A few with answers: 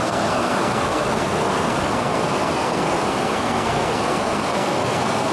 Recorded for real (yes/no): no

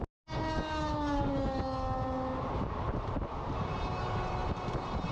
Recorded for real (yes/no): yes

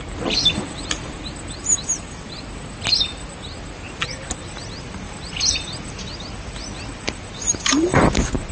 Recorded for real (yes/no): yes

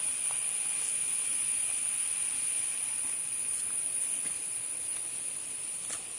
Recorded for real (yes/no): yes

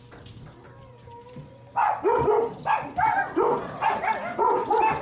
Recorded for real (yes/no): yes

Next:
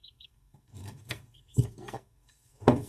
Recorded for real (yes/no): no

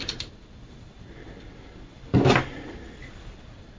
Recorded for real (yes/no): yes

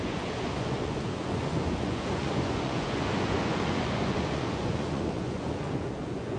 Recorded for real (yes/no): no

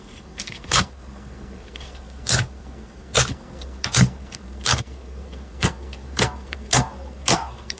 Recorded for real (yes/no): no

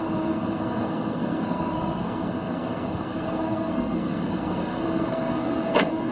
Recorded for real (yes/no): no